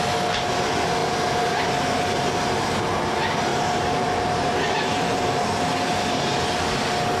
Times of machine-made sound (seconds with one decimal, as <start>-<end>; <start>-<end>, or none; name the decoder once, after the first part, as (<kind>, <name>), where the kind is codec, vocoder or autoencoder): 3.5-5.2 (vocoder, BigVGAN v2)